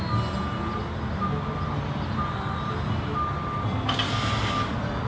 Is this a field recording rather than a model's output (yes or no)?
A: yes